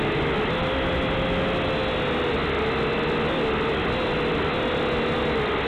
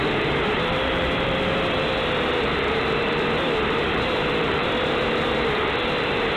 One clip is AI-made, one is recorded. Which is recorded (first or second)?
first